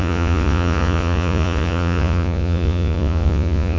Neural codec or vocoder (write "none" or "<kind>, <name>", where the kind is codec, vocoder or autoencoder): vocoder, Vocos